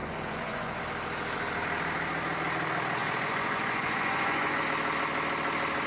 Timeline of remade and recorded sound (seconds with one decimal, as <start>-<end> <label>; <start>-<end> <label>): 0.0-0.8 remade; 0.8-3.0 recorded; 3.0-4.6 remade; 4.6-5.9 recorded